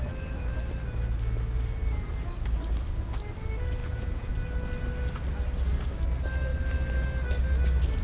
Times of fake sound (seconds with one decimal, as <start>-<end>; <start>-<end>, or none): 3.8-4.3